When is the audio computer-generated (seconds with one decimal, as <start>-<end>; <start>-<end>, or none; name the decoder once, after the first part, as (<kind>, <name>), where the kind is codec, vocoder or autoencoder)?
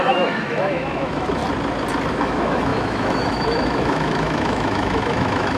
0.0-1.4 (autoencoder, DAC-VAE); 2.1-5.6